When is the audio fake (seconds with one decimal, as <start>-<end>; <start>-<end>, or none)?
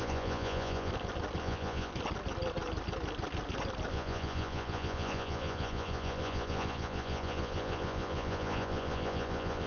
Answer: 0.0-0.9; 1.4-1.9; 3.9-9.7